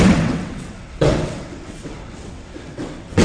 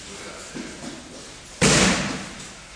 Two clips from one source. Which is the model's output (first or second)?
first